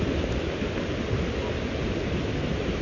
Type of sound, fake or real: real